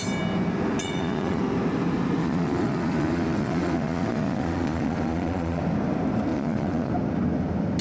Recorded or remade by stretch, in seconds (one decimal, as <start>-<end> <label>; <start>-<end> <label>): 0.0-0.8 recorded; 0.8-1.4 remade; 1.4-2.2 recorded; 2.2-5.6 remade; 5.6-6.3 recorded; 6.3-6.9 remade; 6.9-7.8 recorded